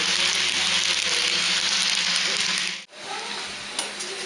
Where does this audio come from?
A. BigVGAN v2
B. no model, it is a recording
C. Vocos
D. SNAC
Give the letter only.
B